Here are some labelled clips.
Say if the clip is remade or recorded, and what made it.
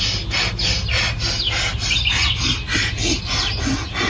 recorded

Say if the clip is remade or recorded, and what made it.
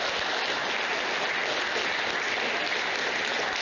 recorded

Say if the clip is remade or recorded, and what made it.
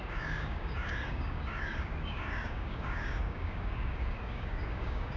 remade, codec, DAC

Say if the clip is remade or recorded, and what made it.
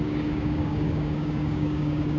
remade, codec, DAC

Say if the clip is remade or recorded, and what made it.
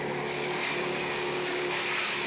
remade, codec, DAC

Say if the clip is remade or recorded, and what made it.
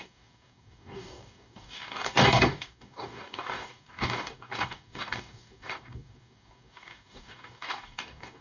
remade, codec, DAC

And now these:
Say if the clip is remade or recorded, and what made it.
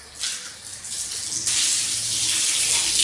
recorded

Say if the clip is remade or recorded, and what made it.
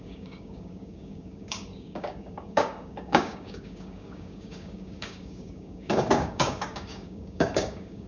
remade, codec, DAC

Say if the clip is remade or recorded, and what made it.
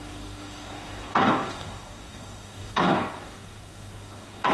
remade, codec, DAC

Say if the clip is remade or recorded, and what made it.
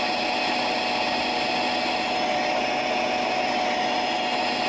recorded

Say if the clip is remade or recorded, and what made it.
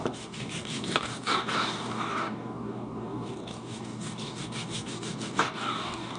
remade, codec, DAC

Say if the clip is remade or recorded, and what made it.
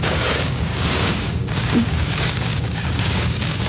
remade, codec, DAC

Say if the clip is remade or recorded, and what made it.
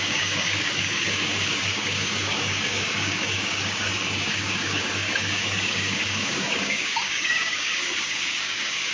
remade, codec, DAC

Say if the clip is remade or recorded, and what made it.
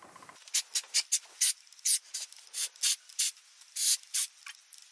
recorded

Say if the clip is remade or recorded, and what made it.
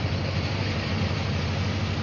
recorded